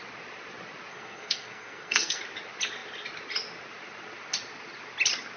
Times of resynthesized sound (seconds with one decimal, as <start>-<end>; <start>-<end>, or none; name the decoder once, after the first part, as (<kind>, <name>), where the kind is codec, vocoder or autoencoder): 0.9-2.2 (codec, SNAC)